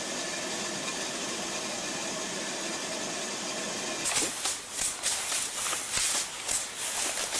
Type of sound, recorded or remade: recorded